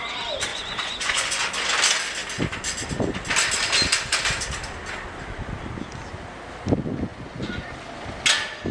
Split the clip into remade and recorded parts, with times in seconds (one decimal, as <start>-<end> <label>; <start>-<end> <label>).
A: 0.0-0.5 recorded; 0.5-1.5 remade; 1.5-7.1 recorded; 7.1-7.7 remade; 7.7-8.7 recorded